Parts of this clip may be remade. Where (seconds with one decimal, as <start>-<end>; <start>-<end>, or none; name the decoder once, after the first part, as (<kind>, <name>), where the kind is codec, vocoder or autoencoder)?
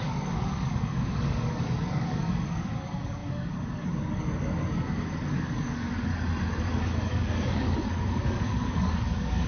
0.0-6.1 (codec, DAC); 6.6-9.5